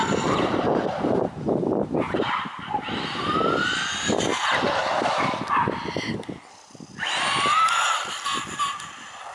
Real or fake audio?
real